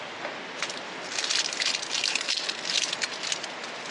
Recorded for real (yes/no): yes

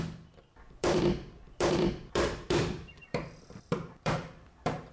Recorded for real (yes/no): no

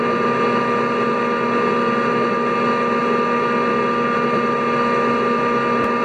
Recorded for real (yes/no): yes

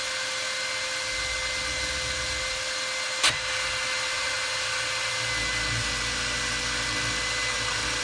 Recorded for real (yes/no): yes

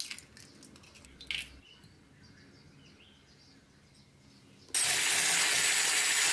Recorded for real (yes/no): yes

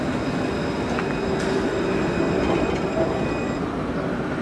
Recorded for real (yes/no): yes